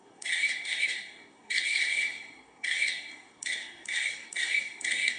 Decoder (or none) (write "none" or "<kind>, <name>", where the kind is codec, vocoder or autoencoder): codec, SNAC